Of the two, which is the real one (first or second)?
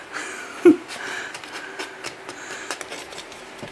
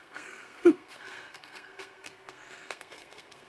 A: first